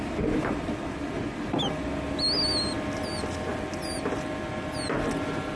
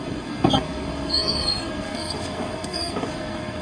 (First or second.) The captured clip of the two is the first